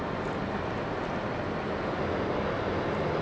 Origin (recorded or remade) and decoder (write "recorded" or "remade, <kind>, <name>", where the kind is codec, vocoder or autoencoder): recorded